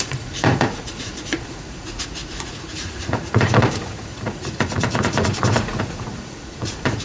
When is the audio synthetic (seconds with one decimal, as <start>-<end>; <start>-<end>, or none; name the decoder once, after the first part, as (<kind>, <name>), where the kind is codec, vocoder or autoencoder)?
0.0-7.0 (vocoder, Vocos)